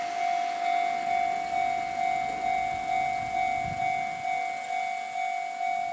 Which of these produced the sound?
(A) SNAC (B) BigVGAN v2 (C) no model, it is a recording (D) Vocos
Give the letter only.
C